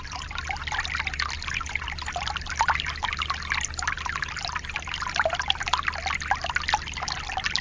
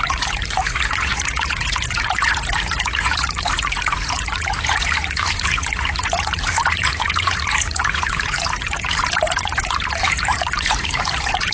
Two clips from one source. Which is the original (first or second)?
first